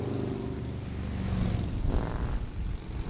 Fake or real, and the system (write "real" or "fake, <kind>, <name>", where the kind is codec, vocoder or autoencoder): real